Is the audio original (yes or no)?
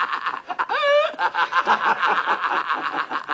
yes